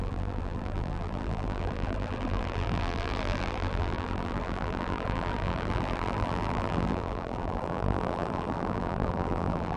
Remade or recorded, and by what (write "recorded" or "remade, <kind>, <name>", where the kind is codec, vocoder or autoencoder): remade, vocoder, BigVGAN v2